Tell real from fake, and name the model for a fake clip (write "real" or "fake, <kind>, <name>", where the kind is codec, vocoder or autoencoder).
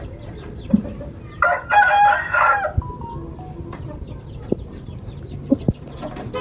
real